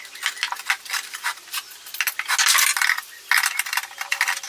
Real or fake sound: real